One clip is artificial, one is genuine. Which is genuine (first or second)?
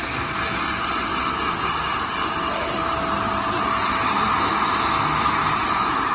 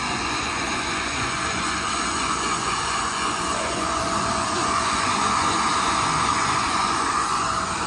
first